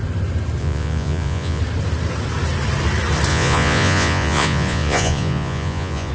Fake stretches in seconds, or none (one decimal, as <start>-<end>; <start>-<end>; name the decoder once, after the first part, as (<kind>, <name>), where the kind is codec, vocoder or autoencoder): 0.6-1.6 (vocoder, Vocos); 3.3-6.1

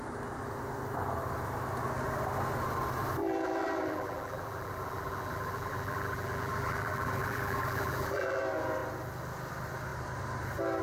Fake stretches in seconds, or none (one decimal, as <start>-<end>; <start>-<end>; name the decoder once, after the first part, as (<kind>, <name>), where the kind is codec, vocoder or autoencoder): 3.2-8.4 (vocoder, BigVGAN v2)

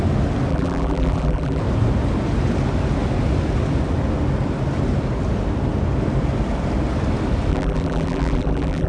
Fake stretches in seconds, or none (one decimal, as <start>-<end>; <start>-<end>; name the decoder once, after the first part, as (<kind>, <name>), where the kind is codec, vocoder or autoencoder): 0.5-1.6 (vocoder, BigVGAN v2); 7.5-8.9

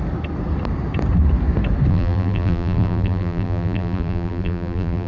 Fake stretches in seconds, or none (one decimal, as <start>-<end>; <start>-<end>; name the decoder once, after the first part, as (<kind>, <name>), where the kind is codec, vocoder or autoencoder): 1.9-5.1 (vocoder, BigVGAN v2)

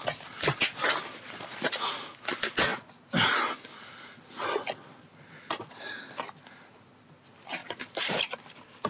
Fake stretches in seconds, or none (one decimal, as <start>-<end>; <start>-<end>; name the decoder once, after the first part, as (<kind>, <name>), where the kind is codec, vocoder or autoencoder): 7.6-8.2 (vocoder, BigVGAN v2)

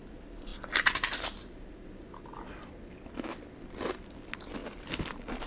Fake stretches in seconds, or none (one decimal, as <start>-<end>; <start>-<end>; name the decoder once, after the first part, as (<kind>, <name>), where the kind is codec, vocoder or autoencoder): none